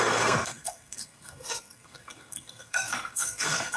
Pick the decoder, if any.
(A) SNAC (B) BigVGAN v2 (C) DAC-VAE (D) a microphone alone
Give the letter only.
A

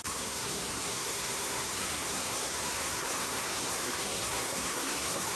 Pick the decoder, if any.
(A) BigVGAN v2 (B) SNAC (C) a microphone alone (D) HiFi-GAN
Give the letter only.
B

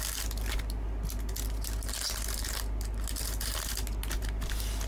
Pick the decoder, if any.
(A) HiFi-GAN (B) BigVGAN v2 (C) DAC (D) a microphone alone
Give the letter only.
D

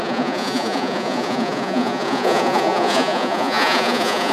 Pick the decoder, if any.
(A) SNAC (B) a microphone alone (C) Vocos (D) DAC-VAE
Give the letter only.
C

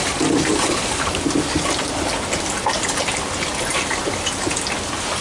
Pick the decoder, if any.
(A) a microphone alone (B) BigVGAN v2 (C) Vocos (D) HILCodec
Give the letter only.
A